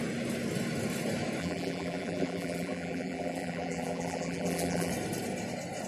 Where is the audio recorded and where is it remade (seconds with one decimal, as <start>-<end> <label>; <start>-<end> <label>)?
0.0-1.4 recorded; 1.4-4.9 remade; 4.9-5.9 recorded